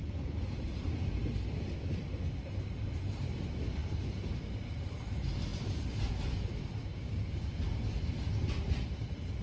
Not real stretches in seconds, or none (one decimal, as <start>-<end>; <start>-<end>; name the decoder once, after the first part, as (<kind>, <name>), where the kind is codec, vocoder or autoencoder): 6.9-7.5 (codec, DAC)